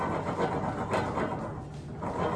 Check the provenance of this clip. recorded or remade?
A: recorded